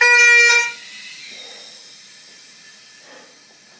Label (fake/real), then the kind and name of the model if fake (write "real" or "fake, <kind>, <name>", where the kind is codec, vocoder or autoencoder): real